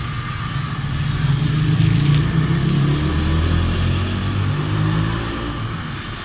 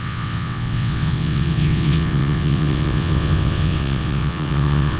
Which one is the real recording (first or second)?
first